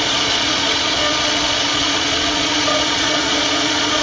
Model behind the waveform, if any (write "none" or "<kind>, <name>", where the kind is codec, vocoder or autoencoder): vocoder, Vocos